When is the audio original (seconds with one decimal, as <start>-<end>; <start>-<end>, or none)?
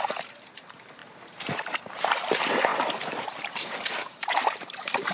2.7-3.2